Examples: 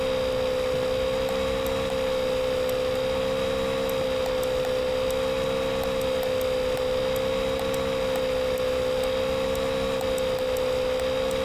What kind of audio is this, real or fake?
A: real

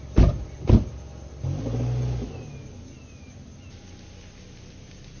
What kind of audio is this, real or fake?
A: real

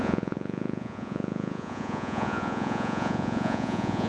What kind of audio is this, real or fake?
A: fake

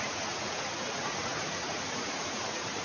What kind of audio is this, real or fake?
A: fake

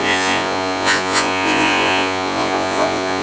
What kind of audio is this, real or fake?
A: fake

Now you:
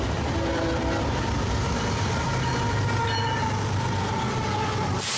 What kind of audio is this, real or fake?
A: real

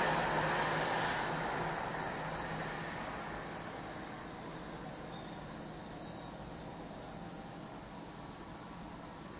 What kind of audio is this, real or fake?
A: real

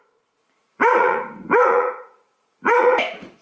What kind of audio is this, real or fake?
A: fake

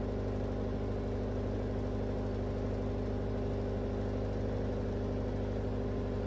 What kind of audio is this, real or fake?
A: real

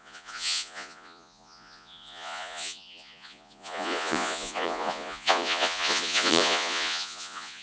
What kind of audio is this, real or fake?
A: fake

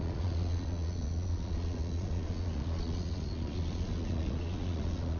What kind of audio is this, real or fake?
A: fake